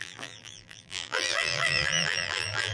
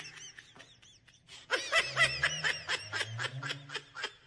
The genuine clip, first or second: second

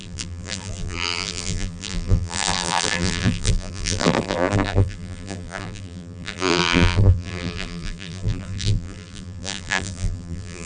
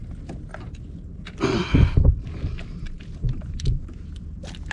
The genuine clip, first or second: second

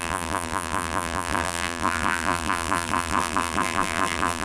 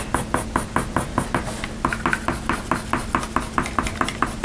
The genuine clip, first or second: second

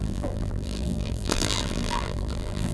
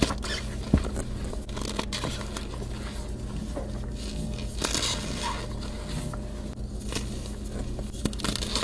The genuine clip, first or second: second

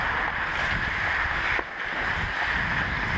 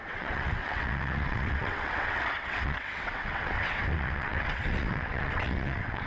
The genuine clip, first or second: first